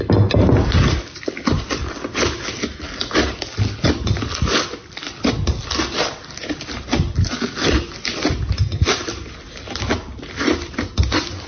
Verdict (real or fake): real